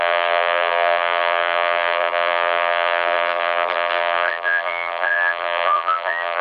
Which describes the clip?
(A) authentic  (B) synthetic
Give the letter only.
B